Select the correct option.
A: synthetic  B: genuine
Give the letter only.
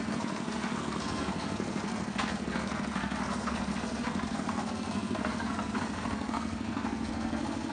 A